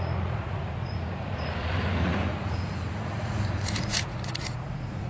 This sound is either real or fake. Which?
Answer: fake